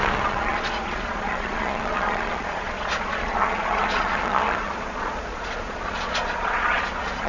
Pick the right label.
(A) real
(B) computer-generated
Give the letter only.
B